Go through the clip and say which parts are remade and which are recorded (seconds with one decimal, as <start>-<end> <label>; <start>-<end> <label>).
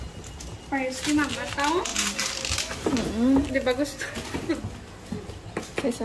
0.0-6.0 recorded